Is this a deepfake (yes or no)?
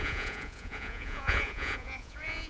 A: yes